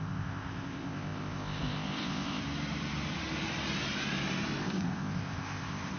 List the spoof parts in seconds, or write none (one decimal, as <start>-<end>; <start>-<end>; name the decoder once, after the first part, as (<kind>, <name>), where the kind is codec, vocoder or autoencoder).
0.0-2.4 (codec, ZipCodec); 4.6-6.0